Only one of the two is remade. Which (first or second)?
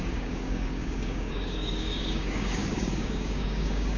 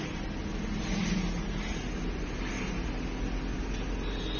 first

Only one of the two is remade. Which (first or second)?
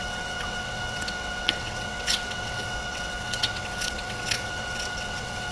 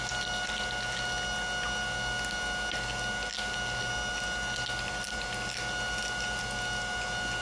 first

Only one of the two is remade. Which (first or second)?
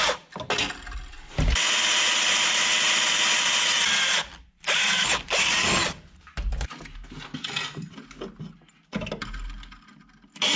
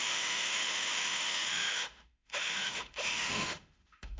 second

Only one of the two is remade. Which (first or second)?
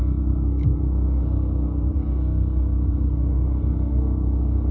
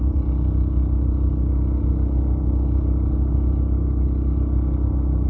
first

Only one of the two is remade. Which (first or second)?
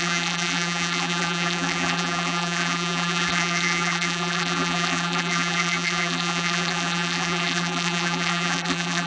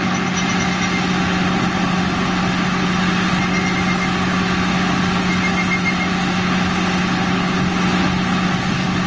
first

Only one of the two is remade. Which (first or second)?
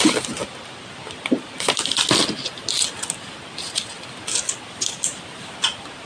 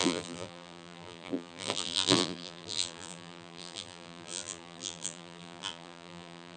second